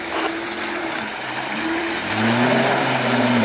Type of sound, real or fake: fake